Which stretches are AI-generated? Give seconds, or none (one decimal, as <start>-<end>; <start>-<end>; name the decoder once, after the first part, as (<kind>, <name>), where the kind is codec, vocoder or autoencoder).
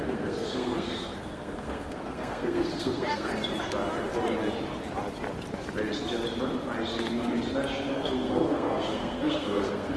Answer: 0.0-3.3 (codec, SNAC); 7.9-10.0